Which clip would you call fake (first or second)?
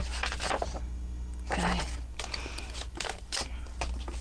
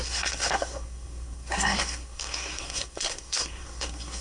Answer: second